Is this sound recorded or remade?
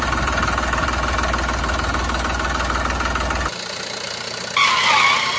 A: recorded